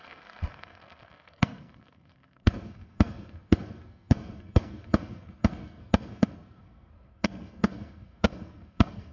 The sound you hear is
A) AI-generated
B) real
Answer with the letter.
A